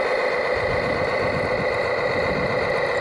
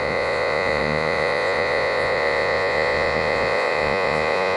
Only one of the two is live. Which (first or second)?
first